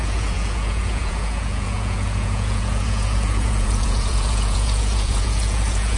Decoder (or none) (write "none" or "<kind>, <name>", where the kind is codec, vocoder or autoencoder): vocoder, Vocos